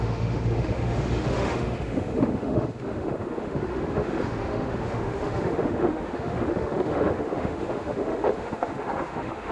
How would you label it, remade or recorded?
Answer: remade